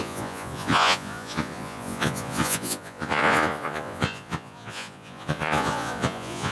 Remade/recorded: remade